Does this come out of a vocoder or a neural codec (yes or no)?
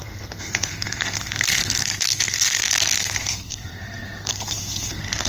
yes